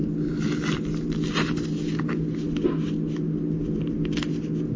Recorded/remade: recorded